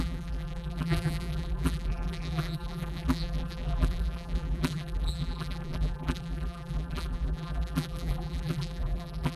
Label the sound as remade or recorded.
remade